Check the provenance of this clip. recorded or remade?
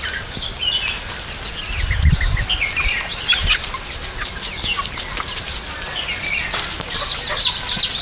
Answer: recorded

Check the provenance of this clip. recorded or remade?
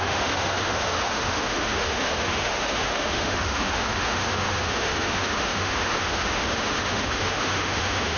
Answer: remade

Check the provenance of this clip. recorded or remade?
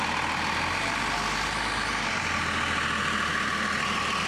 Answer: recorded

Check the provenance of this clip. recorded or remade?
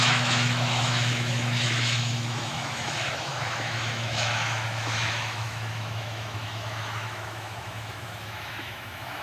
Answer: remade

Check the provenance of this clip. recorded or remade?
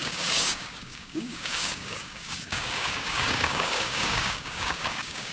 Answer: remade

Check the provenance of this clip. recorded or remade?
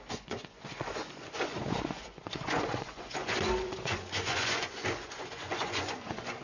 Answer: remade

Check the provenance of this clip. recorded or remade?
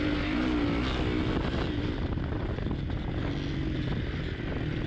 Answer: recorded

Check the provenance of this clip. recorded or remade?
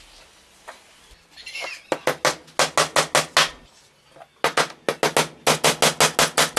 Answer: recorded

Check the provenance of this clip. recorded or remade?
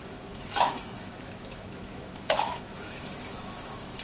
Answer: remade